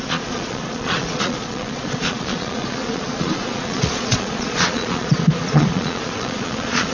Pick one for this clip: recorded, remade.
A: remade